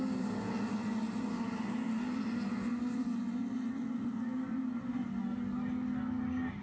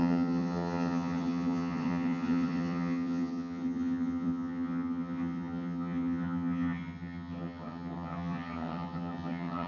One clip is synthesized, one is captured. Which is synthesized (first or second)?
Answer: second